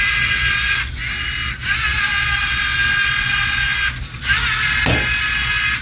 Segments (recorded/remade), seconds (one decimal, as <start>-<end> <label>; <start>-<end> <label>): 0.0-5.8 recorded